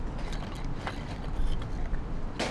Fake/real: real